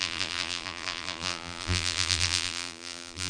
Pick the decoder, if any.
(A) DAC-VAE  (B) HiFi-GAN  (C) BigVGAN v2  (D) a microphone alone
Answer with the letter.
C